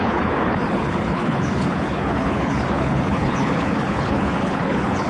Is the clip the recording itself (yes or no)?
no